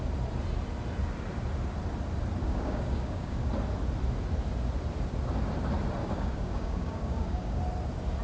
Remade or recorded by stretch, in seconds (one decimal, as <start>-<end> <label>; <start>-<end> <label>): 0.0-2.4 recorded; 2.4-3.5 remade; 3.5-6.0 recorded; 6.0-7.6 remade; 7.6-8.2 recorded